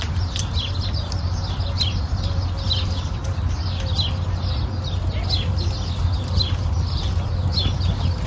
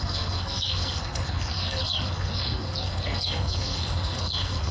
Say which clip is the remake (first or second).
second